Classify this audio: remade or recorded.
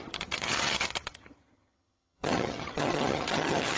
remade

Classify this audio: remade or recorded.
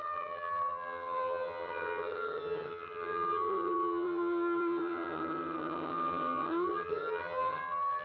remade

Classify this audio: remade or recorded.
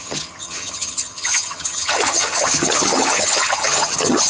remade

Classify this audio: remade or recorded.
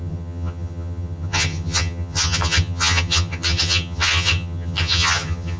remade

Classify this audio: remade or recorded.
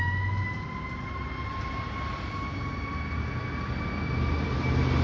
recorded